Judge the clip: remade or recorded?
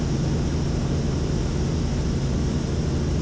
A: recorded